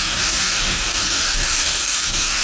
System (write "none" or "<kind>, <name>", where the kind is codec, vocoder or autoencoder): codec, DAC